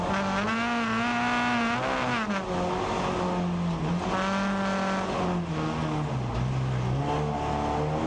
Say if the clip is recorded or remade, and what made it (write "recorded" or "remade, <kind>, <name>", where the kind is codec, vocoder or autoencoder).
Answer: recorded